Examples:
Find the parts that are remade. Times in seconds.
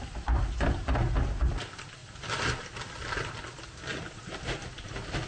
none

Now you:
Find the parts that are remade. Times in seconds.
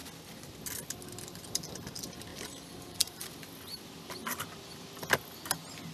2.3-3.3 (vocoder, BigVGAN v2)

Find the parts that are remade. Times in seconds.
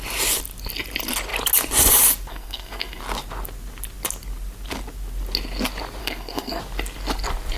2.3-3.0 (codec, SNAC); 6.0-6.6